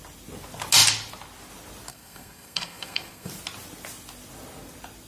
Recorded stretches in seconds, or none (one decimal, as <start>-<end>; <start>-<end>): 0.0-1.9; 3.3-5.1

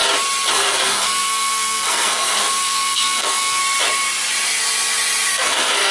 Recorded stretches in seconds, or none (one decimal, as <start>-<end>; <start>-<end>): 0.0-0.5; 3.6-5.3